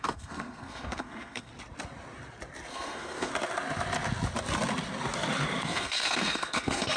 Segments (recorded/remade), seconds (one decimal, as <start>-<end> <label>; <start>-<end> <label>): 0.0-1.5 remade; 1.5-2.7 recorded; 2.7-3.3 remade; 3.3-5.6 recorded; 5.6-7.0 remade